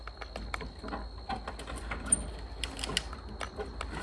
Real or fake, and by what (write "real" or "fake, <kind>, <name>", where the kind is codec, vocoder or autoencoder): real